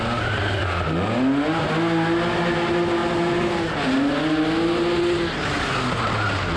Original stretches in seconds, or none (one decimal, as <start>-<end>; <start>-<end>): 0.0-6.6